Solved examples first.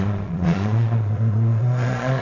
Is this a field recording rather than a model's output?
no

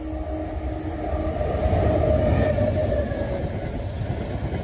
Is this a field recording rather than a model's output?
yes